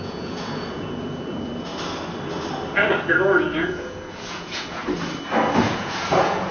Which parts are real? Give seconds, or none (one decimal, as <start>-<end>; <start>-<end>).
1.7-3.7; 4.8-5.6